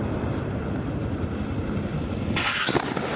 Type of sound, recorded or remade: recorded